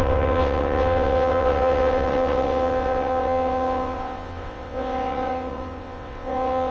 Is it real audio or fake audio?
fake